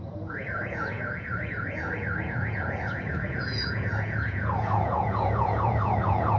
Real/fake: fake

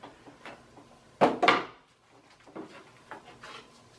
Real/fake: real